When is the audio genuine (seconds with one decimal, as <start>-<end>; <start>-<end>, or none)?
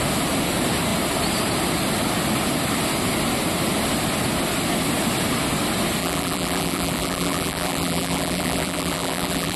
0.0-6.0